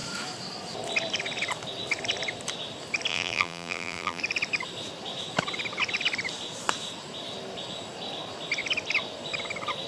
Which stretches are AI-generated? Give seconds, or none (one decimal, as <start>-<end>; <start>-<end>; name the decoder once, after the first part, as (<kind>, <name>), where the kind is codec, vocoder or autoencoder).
3.1-4.2 (vocoder, BigVGAN v2)